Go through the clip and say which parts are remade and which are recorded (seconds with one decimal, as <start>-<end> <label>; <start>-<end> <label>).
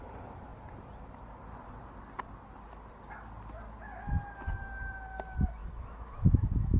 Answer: 0.0-5.6 recorded; 5.6-6.8 remade